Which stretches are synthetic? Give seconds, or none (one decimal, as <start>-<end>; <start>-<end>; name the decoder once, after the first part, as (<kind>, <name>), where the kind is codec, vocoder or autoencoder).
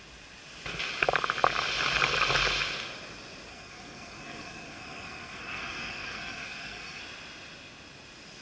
3.5-7.0 (codec, SNAC)